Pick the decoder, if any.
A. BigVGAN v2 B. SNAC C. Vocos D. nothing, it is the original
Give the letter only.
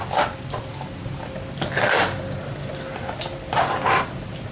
D